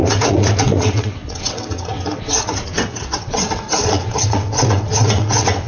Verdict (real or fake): fake